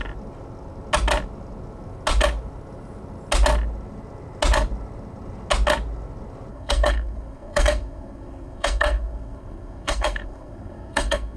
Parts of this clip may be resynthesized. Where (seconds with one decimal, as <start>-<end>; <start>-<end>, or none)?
6.5-11.4